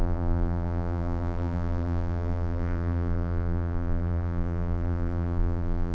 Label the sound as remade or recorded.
remade